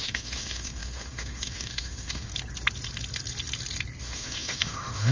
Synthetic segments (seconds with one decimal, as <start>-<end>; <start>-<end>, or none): 0.0-2.3; 4.0-5.1